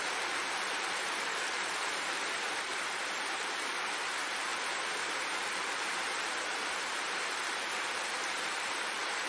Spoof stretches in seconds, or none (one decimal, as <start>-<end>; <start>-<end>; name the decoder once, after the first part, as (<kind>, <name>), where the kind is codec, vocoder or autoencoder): 0.0-2.7 (vocoder, BigVGAN v2); 3.2-9.3